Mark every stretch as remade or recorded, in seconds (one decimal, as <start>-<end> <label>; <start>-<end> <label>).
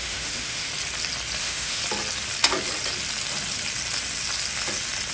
0.0-0.7 remade; 0.7-1.4 recorded; 1.4-1.8 remade; 1.8-5.1 recorded